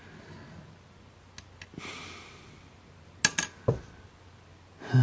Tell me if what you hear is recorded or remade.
recorded